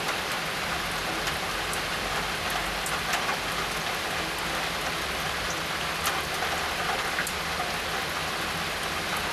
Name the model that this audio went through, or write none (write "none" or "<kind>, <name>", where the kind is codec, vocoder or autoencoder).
none